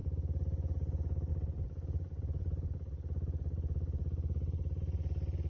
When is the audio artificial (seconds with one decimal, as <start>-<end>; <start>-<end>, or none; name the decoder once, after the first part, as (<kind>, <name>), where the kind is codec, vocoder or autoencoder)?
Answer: none